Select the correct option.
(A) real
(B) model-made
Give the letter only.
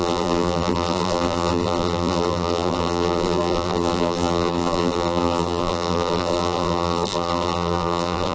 B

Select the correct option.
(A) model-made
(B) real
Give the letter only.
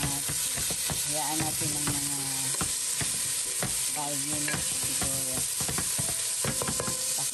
B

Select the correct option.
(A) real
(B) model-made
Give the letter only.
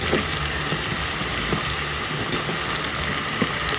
A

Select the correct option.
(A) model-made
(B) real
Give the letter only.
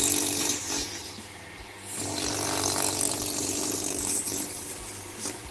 A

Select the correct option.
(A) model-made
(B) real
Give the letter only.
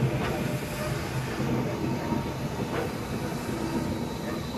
B